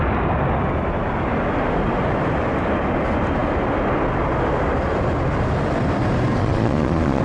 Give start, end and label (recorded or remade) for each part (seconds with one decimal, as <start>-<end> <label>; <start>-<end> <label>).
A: 0.0-6.4 recorded; 6.4-7.2 remade